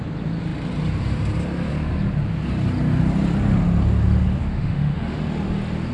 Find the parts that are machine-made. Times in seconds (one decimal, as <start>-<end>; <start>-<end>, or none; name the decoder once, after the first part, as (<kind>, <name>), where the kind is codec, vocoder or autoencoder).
4.4-5.2 (autoencoder, DAC-VAE)